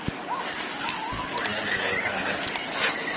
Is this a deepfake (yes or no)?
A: no